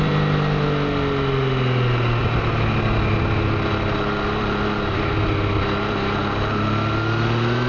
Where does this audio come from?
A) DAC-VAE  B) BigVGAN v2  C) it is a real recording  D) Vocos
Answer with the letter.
C